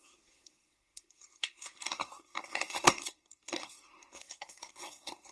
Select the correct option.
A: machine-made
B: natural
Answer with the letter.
A